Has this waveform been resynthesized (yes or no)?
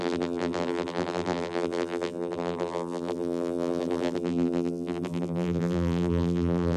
yes